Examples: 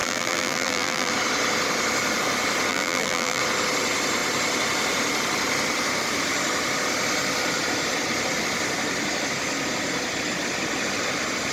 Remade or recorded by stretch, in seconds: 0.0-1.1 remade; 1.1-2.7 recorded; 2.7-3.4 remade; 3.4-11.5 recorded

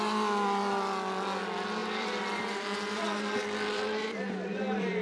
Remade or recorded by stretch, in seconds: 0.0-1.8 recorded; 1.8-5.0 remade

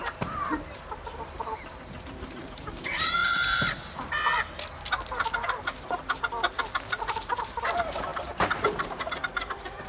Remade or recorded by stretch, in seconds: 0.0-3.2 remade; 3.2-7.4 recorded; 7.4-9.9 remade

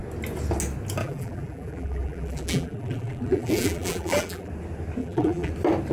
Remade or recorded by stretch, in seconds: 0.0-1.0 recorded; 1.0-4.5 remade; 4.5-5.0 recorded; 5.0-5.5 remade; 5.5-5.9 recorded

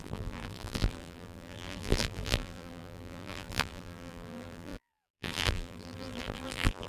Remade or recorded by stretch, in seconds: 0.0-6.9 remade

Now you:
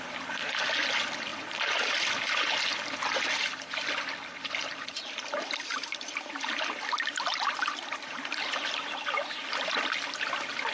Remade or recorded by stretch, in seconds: 0.0-10.7 recorded

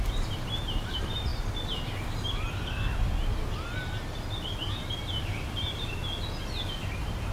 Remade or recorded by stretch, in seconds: 0.0-1.3 remade; 1.3-5.1 recorded; 5.1-6.0 remade; 6.0-6.8 recorded; 6.8-7.3 remade